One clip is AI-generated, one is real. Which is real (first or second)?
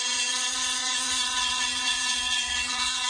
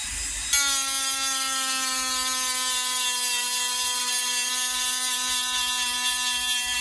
second